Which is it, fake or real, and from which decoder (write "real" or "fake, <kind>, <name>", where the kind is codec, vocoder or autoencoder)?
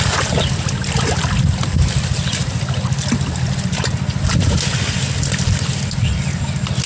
real